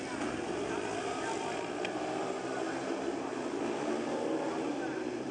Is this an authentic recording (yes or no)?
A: yes